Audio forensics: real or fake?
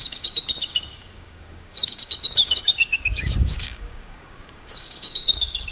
fake